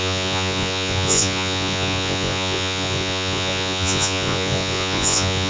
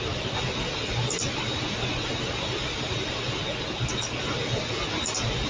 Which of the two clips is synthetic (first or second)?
first